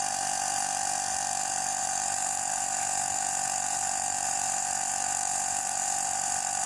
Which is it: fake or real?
fake